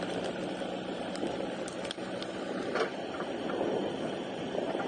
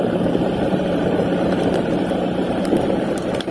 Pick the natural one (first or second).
first